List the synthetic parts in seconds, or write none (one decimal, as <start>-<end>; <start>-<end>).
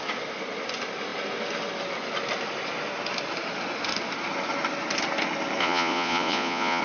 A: 5.6-6.8